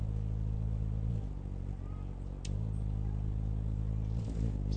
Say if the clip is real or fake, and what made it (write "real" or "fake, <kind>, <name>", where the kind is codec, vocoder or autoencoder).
real